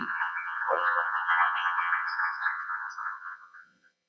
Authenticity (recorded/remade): remade